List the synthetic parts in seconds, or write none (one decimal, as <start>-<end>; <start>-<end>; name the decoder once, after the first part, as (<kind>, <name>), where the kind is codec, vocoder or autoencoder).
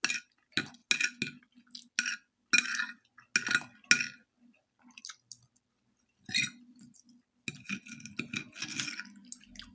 none